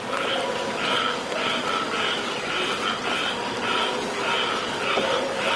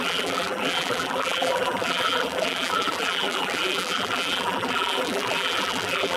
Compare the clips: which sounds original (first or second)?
first